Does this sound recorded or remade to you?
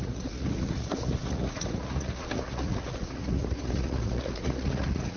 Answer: remade